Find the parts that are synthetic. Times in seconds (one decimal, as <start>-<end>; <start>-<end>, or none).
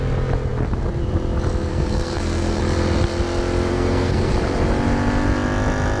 1.7-2.6; 3.7-4.3